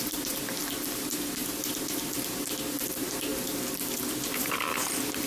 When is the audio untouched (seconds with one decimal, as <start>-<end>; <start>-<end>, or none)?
3.3-4.4